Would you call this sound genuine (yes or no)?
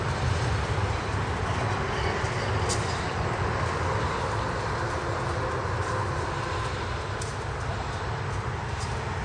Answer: yes